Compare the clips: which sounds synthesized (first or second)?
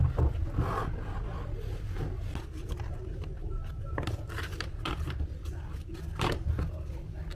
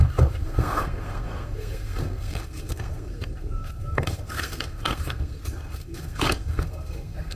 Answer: second